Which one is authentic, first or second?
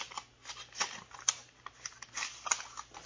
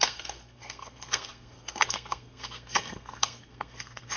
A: first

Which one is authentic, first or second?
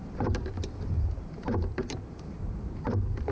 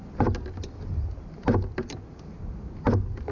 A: second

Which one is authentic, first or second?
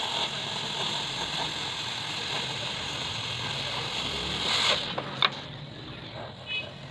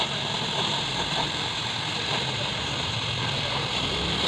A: first